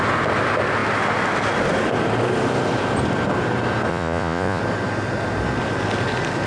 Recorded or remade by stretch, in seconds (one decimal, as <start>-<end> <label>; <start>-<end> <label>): 0.0-3.9 recorded; 3.9-4.6 remade; 4.6-6.5 recorded